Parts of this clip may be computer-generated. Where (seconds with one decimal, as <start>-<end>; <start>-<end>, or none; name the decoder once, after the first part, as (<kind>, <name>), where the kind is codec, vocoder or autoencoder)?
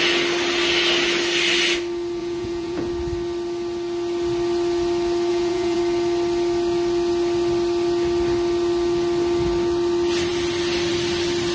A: 2.2-2.9 (vocoder, Vocos); 5.3-5.8